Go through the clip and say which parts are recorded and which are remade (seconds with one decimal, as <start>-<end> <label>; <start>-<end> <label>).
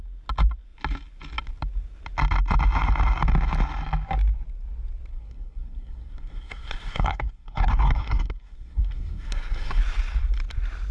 0.0-5.1 recorded; 5.1-9.8 remade; 9.8-10.9 recorded